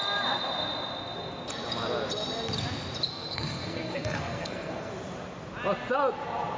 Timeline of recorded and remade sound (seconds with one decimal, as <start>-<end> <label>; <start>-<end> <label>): 0.0-3.1 recorded; 3.1-4.9 remade; 4.9-6.6 recorded